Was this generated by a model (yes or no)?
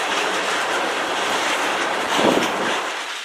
yes